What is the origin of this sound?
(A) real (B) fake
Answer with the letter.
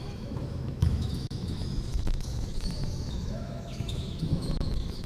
B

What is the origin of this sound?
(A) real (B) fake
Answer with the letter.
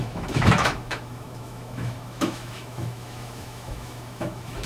B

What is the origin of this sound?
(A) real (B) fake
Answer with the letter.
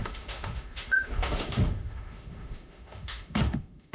B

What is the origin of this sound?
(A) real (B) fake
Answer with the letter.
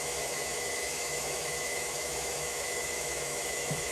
B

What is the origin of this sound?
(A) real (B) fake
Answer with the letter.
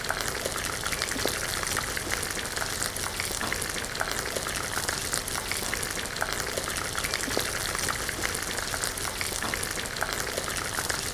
A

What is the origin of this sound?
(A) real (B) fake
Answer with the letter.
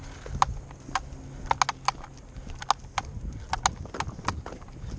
A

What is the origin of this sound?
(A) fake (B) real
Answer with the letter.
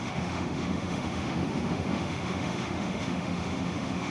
A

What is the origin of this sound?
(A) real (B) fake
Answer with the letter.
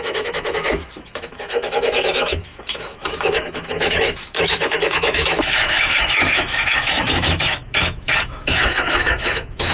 B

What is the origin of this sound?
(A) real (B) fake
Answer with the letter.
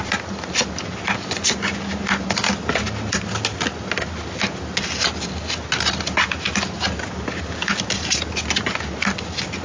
A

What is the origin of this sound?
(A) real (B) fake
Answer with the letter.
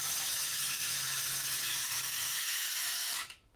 B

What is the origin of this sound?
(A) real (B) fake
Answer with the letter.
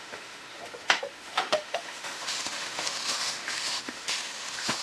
B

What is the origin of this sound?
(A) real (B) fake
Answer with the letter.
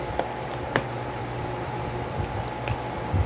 A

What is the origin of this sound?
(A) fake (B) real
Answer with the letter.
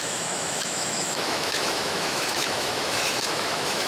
A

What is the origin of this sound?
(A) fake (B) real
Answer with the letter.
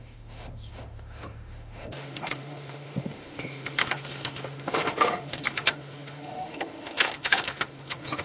A